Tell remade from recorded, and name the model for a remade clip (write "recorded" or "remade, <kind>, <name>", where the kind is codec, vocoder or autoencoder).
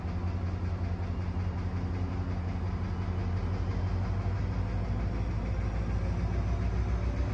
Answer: recorded